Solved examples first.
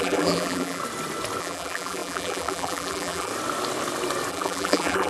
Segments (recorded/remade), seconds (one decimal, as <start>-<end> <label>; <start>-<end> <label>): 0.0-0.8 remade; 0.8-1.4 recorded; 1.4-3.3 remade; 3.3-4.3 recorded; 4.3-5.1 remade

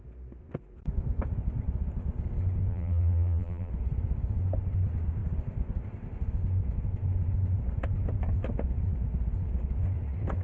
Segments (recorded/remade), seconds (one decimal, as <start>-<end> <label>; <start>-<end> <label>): 0.0-2.7 recorded; 2.7-3.7 remade; 3.7-10.4 recorded

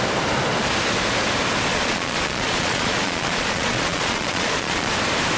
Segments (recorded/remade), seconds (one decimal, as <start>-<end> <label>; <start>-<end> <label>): 0.0-1.7 recorded; 1.7-4.9 remade; 4.9-5.4 recorded

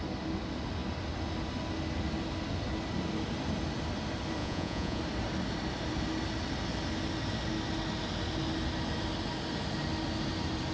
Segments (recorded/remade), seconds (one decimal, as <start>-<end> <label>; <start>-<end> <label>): 0.0-4.4 recorded; 4.4-5.0 remade; 5.0-10.7 recorded

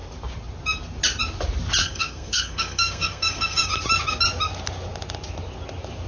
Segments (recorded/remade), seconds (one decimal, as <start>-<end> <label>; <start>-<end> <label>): 0.0-1.8 recorded; 1.8-3.7 remade; 3.7-6.1 recorded